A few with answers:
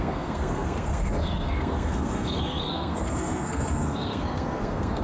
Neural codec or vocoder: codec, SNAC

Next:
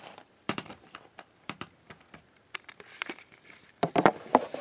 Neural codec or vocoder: vocoder, BigVGAN v2